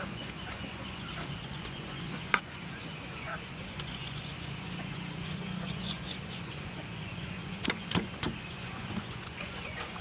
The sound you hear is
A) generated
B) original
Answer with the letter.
A